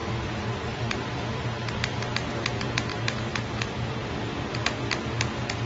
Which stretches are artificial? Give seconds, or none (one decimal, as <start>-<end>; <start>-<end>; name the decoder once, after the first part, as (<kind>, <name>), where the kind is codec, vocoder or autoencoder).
none